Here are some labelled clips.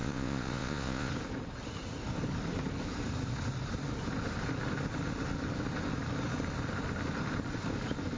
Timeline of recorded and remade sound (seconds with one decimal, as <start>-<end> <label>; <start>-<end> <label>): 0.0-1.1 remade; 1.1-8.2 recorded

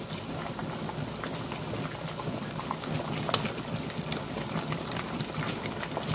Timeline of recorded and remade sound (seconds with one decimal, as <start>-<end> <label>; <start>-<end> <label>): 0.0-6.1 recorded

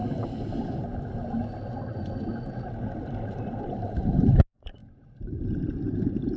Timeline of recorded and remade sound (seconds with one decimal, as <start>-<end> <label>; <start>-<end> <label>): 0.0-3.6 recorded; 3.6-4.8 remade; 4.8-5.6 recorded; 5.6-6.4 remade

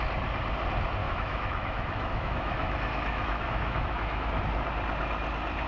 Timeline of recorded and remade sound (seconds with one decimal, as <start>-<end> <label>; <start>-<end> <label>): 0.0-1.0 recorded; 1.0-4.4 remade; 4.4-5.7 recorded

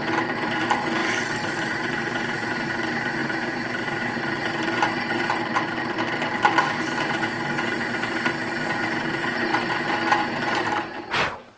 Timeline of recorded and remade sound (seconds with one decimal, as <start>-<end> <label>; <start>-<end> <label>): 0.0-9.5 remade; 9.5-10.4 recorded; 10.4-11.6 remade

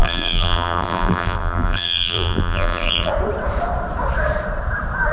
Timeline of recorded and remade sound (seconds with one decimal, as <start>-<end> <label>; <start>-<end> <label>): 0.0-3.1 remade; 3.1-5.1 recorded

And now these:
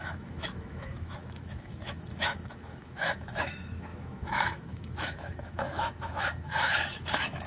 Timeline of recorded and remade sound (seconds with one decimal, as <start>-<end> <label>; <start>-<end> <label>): 0.0-7.5 remade

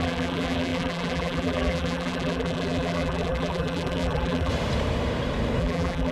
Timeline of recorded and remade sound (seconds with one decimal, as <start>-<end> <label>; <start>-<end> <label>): 0.0-4.5 remade; 4.5-5.6 recorded; 5.6-6.1 remade